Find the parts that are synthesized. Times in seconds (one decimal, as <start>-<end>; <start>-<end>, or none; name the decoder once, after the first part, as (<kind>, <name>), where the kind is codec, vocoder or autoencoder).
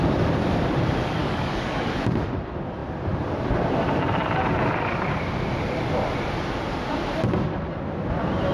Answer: 1.2-1.9 (codec, DAC)